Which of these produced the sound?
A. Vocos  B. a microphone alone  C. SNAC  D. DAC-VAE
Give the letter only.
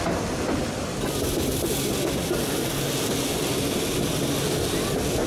B